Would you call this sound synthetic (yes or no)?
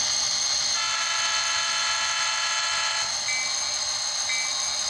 no